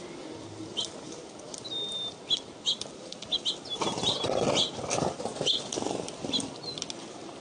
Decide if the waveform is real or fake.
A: real